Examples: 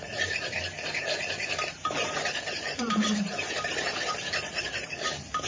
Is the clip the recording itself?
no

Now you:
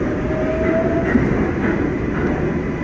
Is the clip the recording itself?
yes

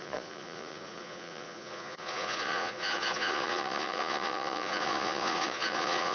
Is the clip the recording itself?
no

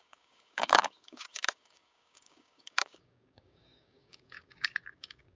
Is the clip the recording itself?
no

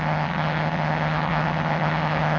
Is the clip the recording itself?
no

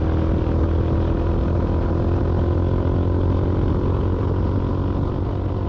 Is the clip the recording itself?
yes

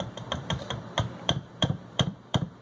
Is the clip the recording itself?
no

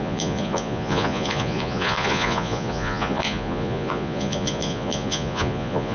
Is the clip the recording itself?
no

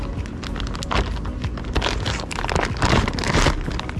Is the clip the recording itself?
yes